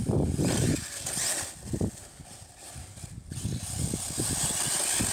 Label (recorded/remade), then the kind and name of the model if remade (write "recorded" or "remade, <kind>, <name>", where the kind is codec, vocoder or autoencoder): recorded